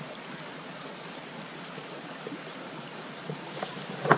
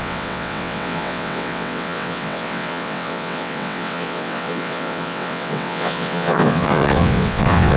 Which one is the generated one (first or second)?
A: second